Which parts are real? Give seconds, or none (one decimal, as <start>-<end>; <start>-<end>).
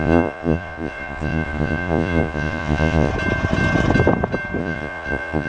3.1-4.6